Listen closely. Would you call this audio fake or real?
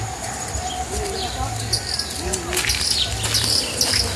real